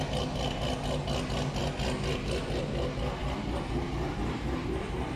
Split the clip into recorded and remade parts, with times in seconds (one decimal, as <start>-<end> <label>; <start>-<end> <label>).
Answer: 0.0-5.2 recorded